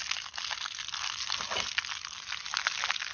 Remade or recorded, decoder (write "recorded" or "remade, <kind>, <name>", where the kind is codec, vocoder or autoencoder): recorded